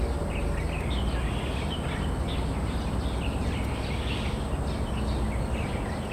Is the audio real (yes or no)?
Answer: yes